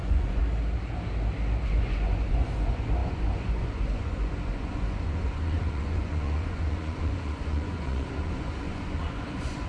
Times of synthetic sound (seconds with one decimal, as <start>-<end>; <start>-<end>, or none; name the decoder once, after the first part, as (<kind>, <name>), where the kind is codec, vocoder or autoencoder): 0.0-0.4 (vocoder, Vocos); 1.7-9.7